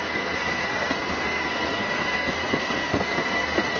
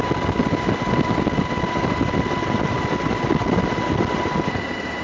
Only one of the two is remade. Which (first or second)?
first